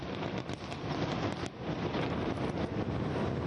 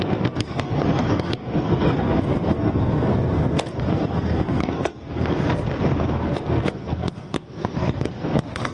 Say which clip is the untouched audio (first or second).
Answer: first